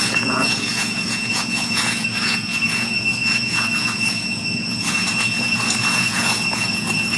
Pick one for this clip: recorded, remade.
remade